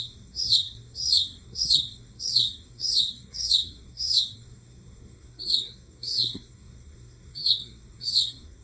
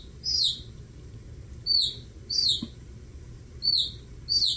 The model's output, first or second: first